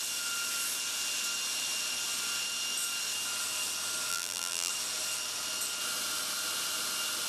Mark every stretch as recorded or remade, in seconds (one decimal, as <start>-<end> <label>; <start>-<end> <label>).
0.0-4.1 recorded; 4.1-4.7 remade; 4.7-7.3 recorded